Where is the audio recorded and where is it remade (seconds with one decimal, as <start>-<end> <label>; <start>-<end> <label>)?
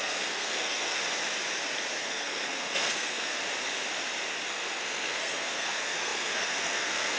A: 0.0-1.0 remade; 1.0-2.0 recorded; 2.0-3.4 remade; 3.4-4.5 recorded; 4.5-7.2 remade